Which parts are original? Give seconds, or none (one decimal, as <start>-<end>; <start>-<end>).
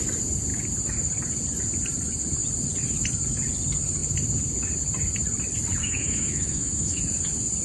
0.0-5.8; 7.0-7.6